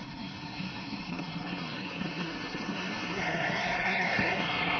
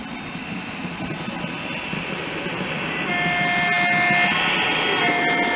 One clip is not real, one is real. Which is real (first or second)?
second